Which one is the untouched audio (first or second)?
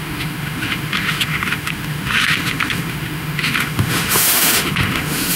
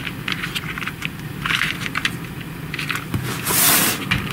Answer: second